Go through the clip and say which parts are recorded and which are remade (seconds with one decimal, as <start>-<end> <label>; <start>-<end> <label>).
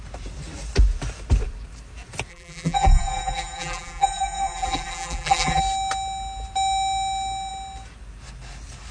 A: 0.0-2.3 recorded; 2.3-5.6 remade; 5.6-8.9 recorded